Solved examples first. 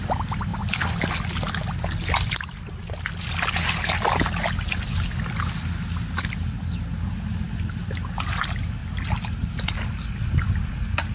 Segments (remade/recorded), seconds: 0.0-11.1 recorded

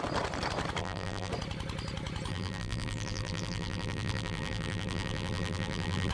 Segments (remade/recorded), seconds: 0.0-0.8 recorded; 0.8-1.3 remade; 1.3-2.3 recorded; 2.3-6.1 remade

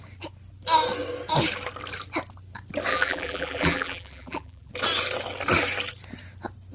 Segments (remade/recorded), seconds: 0.0-2.9 recorded; 2.9-4.7 remade; 4.7-6.7 recorded